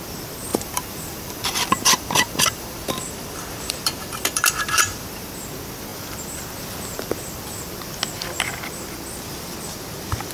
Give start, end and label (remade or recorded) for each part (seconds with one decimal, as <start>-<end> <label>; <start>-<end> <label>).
0.0-0.5 recorded; 0.5-5.3 remade; 5.3-10.3 recorded

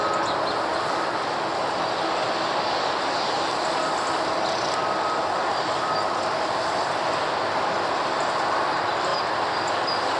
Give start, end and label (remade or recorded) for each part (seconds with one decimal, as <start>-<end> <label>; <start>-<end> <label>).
0.0-9.1 recorded; 9.1-9.7 remade; 9.7-10.2 recorded

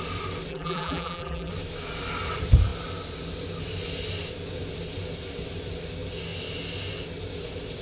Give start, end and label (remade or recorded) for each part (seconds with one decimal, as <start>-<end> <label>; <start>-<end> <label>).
0.0-0.5 recorded; 0.5-1.5 remade; 1.5-7.8 recorded

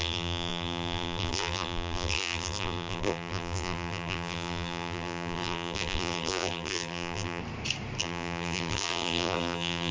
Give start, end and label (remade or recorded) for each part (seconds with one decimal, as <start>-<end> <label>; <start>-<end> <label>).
0.0-7.4 remade; 7.4-8.0 recorded; 8.0-9.9 remade

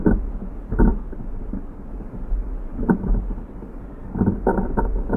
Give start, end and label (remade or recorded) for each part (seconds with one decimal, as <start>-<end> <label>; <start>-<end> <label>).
0.0-5.2 recorded